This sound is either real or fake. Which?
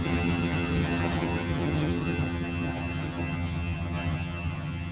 fake